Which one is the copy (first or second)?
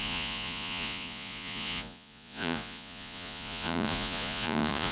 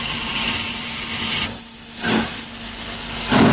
first